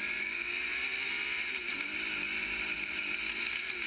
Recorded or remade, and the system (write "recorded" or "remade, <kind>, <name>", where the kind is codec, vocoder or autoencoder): recorded